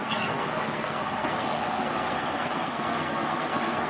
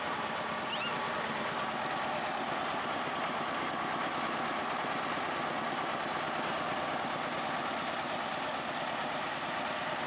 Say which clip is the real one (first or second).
second